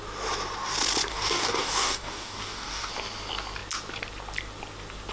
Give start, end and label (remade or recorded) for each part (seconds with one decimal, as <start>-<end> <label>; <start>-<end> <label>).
0.0-1.1 recorded; 1.1-2.9 remade; 2.9-5.1 recorded